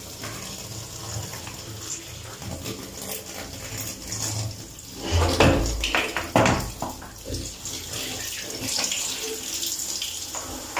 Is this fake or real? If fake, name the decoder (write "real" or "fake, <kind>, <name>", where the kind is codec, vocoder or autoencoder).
real